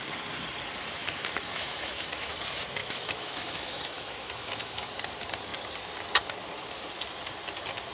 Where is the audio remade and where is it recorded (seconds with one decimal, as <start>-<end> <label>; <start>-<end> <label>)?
0.0-1.0 recorded; 1.0-2.3 remade; 2.3-2.8 recorded; 2.8-4.9 remade; 4.9-7.9 recorded